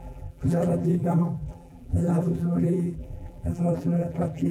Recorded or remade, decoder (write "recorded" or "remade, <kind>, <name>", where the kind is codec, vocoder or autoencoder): remade, vocoder, BigVGAN v2